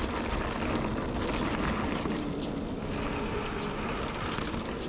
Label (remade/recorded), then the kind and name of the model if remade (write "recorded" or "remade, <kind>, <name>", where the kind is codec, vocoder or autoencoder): recorded